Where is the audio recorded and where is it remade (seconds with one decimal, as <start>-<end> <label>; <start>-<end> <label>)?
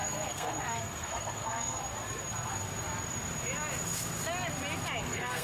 0.0-1.8 remade; 1.8-5.0 recorded; 5.0-5.4 remade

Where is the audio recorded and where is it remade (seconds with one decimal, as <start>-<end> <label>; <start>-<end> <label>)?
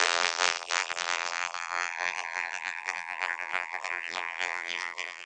0.0-5.3 remade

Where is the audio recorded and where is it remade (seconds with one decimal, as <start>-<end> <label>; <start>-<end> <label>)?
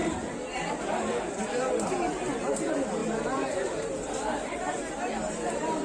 0.0-0.8 remade; 0.8-3.0 recorded; 3.0-4.9 remade; 4.9-5.8 recorded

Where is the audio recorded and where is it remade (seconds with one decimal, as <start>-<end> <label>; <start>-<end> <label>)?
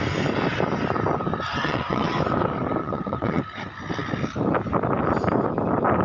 0.0-1.5 recorded; 1.5-2.1 remade; 2.1-2.8 recorded; 2.8-3.4 remade; 3.4-6.0 recorded